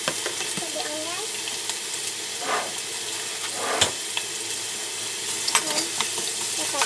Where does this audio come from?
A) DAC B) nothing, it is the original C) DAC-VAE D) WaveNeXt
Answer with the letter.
B